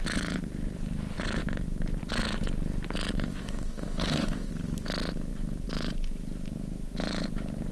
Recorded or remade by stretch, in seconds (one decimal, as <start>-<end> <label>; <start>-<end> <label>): 0.0-3.3 recorded; 3.3-4.5 remade; 4.5-7.7 recorded